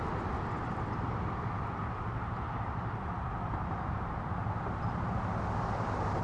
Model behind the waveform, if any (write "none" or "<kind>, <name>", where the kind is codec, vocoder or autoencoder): none